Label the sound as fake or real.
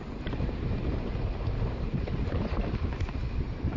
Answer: fake